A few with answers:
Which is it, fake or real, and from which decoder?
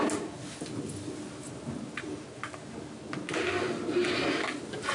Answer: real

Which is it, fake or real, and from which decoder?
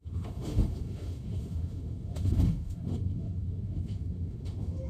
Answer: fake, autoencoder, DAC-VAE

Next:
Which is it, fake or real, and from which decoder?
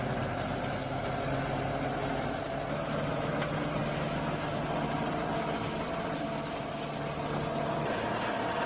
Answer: real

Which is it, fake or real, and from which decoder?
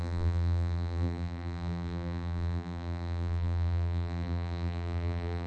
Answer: fake, vocoder, BigVGAN v2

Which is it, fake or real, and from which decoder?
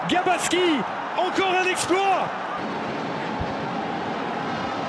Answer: real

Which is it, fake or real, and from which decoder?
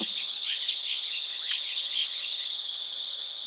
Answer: fake, codec, HILCodec